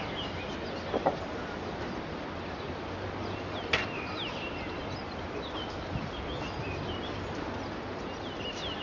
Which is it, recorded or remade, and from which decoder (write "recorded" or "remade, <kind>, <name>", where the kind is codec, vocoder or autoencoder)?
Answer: recorded